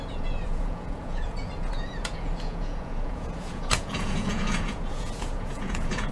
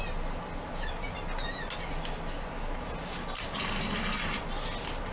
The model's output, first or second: first